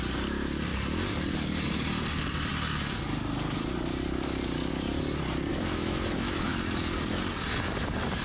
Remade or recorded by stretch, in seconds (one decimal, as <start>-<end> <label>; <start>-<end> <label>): 0.0-5.5 recorded; 5.5-6.5 remade; 6.5-8.2 recorded